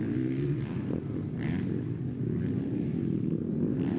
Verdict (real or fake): real